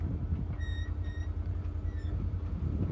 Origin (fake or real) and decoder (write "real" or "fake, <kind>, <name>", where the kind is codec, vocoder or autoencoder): real